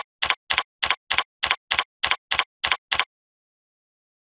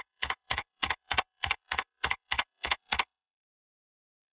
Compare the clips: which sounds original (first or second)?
first